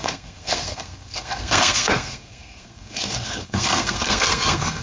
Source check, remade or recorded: remade